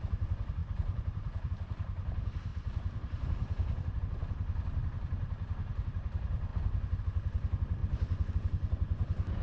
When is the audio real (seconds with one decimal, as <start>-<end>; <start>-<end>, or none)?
0.0-0.6; 1.5-2.5; 4.0-9.4